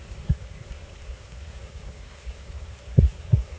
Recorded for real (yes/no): no